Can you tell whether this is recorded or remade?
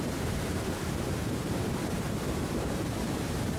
remade